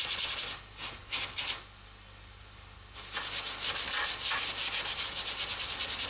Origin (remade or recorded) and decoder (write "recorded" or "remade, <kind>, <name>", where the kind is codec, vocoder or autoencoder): recorded